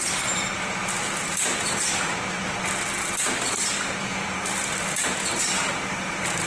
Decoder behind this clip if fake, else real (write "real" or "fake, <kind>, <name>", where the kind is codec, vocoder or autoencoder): real